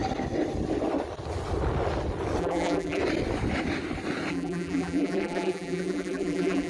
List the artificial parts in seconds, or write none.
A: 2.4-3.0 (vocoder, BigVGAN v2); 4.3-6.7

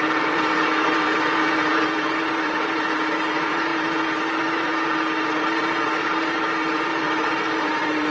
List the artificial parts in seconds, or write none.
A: 0.0-8.1 (vocoder, BigVGAN v2)

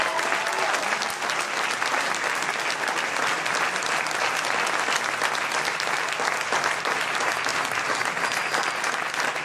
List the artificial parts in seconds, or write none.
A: none